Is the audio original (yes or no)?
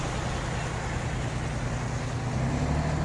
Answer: yes